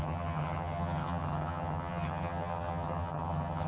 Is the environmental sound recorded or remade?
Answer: remade